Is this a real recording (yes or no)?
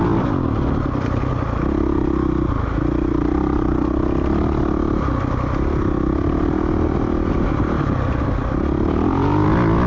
yes